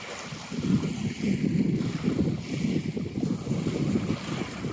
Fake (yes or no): no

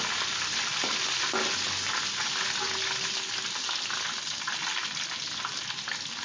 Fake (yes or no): no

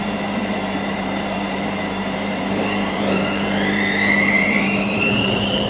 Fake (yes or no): yes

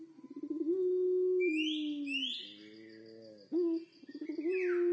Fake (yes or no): no